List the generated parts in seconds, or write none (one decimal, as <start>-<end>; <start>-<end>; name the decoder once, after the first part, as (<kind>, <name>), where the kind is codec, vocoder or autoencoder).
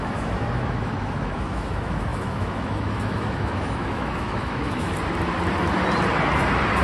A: 0.0-4.9 (autoencoder, DAC-VAE)